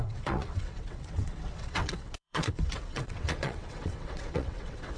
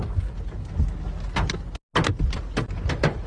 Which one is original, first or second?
second